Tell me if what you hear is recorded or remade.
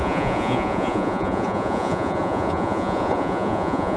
remade